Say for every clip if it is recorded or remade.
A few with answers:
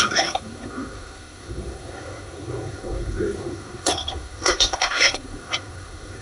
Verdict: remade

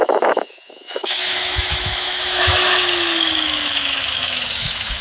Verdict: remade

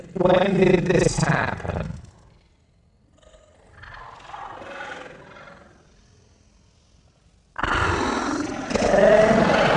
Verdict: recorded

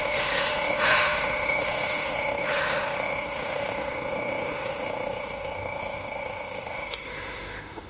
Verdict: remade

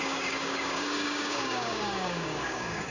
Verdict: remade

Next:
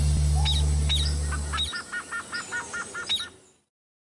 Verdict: recorded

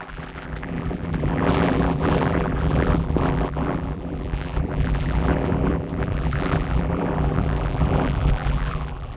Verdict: remade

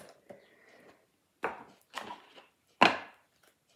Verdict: recorded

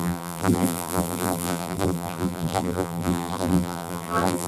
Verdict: remade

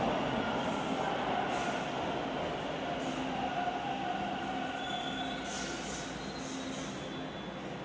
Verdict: recorded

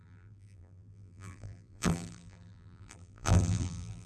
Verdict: remade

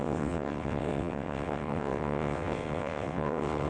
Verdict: remade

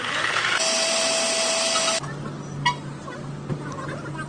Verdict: recorded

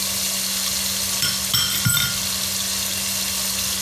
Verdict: recorded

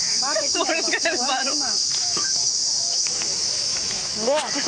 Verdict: remade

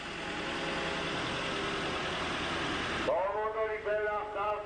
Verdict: recorded